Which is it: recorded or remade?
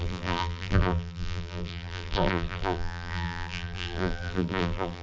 remade